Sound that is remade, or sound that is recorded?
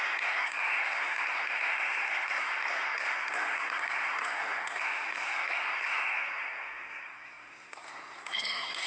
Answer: remade